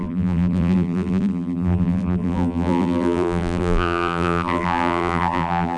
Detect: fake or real fake